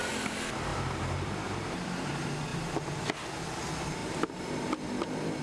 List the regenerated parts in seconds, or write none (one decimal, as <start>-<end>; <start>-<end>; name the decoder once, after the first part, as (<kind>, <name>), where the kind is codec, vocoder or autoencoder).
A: 0.7-2.1 (vocoder, BigVGAN v2); 4.0-4.5